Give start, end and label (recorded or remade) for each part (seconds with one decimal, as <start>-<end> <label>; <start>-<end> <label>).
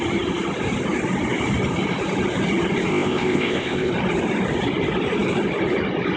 0.0-2.9 recorded; 2.9-3.9 remade; 3.9-6.2 recorded